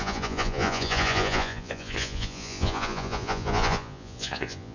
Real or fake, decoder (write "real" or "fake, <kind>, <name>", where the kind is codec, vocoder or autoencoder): fake, vocoder, Vocos